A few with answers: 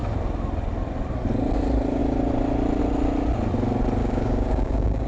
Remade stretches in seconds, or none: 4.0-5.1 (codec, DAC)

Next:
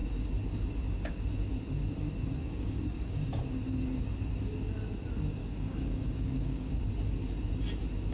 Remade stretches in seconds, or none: 2.4-3.4 (codec, DAC); 5.4-6.8

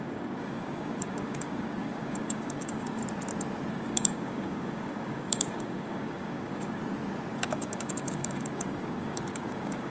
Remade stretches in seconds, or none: 0.0-3.0 (codec, DAC); 3.7-6.8; 7.3-9.9

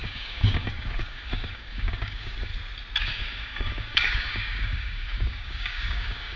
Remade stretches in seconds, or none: 0.0-2.5 (codec, DAC); 3.0-6.4

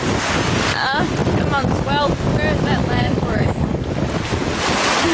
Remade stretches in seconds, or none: 2.8-3.8 (codec, DAC)